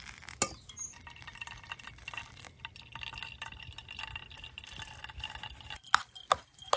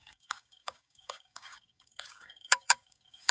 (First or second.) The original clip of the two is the first